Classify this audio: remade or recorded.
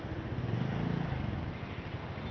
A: recorded